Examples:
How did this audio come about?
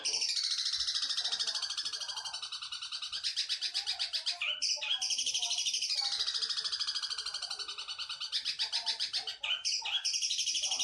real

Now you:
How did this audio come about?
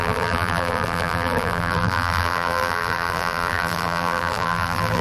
fake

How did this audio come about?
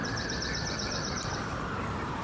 fake